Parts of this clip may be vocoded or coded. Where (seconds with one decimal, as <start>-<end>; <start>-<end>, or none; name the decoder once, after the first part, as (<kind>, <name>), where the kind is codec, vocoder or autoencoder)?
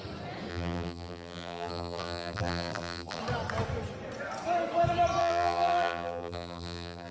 0.5-3.2 (vocoder, BigVGAN v2); 5.2-7.1